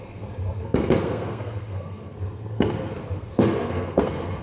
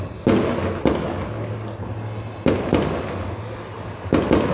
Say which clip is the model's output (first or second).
first